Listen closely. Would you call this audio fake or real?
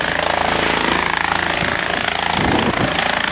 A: real